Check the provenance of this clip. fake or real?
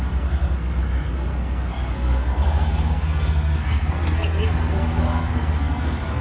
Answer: fake